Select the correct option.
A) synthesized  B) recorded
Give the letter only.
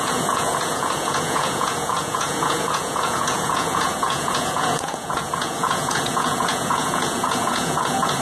A